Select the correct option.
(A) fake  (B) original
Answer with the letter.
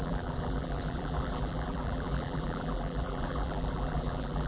A